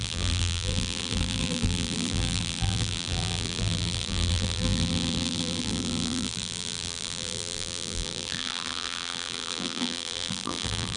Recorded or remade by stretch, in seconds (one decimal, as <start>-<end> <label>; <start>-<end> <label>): 0.0-11.0 remade